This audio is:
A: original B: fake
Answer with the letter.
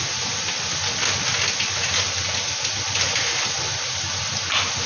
A